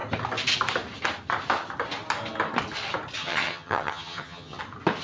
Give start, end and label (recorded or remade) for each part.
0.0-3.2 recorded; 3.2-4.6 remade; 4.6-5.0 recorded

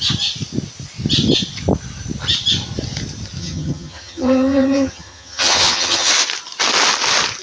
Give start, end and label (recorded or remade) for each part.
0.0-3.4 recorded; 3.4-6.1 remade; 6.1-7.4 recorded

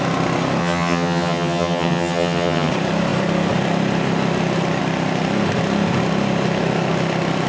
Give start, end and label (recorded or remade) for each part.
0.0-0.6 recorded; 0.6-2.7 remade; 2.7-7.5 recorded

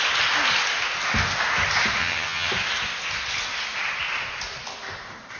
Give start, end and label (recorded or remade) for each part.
0.0-2.0 recorded; 2.0-2.5 remade; 2.5-5.4 recorded